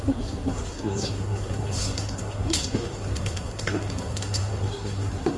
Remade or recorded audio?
remade